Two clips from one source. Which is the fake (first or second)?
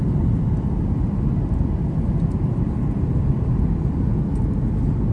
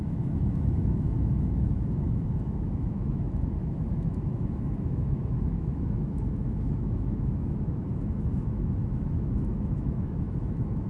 second